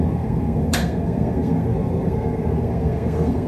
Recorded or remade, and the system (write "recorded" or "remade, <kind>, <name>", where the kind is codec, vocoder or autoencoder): remade, codec, SNAC